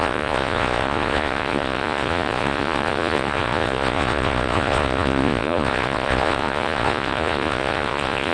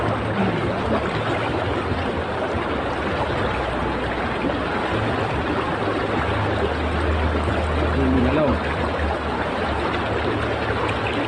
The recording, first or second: second